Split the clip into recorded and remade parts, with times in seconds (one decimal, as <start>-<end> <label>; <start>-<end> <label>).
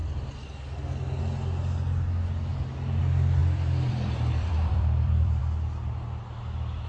0.0-3.4 recorded; 3.4-5.4 remade; 5.4-6.9 recorded